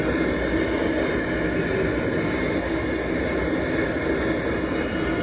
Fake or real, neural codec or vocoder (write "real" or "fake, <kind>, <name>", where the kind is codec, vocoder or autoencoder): real